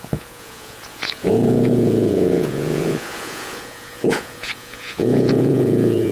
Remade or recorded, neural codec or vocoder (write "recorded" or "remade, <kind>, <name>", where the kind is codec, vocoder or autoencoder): remade, vocoder, Vocos